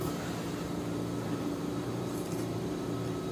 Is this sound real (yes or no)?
no